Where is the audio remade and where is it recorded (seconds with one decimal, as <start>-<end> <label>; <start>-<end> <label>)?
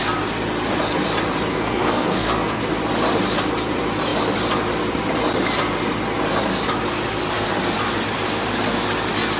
0.0-1.5 recorded; 1.5-2.6 remade; 2.6-9.4 recorded